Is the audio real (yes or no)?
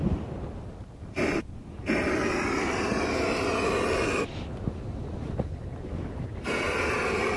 yes